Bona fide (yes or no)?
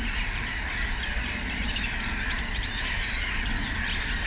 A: no